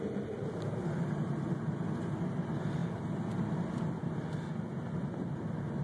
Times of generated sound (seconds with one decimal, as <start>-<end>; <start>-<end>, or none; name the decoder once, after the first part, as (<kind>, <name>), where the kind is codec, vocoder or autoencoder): none